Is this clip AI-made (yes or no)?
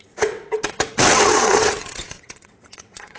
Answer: yes